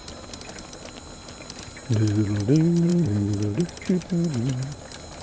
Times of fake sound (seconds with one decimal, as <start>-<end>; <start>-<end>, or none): 2.9-3.6